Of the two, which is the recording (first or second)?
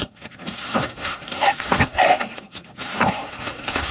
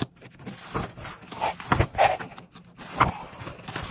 second